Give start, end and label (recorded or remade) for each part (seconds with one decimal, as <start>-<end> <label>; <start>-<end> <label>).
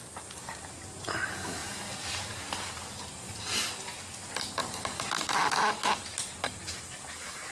0.0-7.5 recorded